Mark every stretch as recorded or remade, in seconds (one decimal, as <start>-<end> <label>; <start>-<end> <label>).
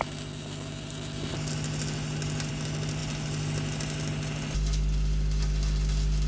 0.0-6.3 recorded